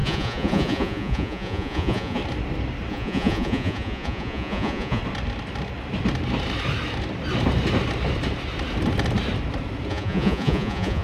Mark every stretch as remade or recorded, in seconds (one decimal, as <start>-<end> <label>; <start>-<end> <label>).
0.0-2.2 remade; 2.2-2.9 recorded; 2.9-5.0 remade; 5.0-9.9 recorded; 9.9-11.0 remade

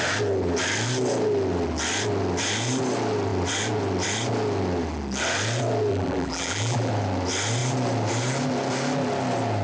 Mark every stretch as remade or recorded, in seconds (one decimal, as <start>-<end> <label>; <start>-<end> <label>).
0.0-5.9 recorded; 5.9-6.9 remade; 6.9-9.6 recorded

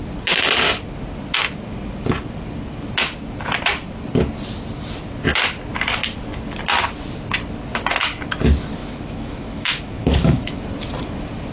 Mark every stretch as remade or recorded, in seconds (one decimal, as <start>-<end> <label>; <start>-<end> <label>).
0.0-8.8 recorded; 8.8-10.6 remade; 10.6-11.5 recorded